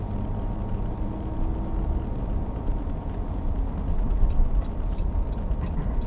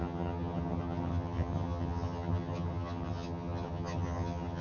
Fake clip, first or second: second